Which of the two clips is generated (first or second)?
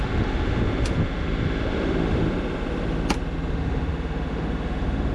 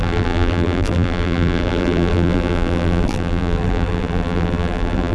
second